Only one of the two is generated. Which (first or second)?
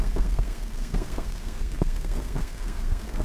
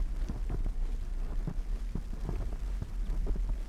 first